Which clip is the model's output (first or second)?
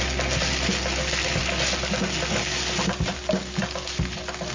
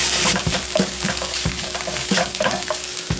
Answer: second